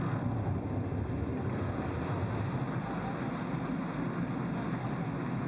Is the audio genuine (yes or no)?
yes